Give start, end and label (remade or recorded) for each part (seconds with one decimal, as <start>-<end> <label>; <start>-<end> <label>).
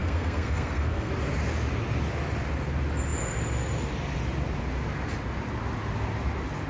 0.0-1.1 remade; 1.1-6.7 recorded